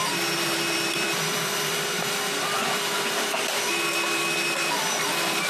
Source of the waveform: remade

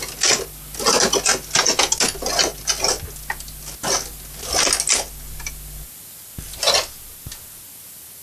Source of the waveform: recorded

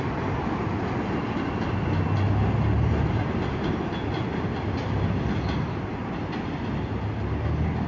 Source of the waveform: recorded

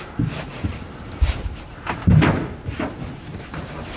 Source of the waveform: recorded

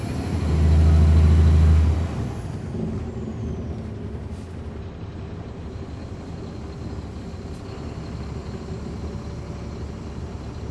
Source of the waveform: recorded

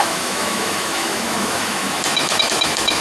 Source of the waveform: remade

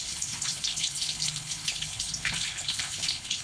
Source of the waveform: remade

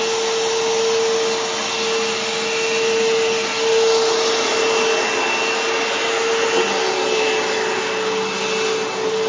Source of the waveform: recorded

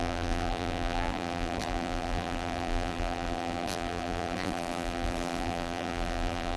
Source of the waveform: remade